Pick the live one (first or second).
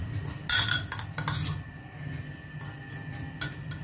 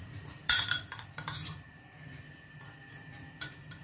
first